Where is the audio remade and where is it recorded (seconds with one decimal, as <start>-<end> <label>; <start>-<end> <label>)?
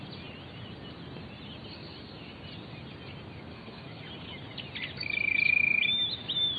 0.0-3.5 recorded; 3.5-4.0 remade; 4.0-6.6 recorded